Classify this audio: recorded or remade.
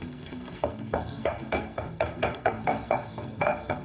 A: remade